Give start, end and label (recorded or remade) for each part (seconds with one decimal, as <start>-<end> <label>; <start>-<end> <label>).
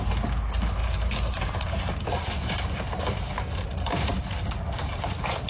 0.0-0.8 recorded; 0.8-2.6 remade; 2.6-3.4 recorded; 3.4-4.2 remade; 4.2-5.5 recorded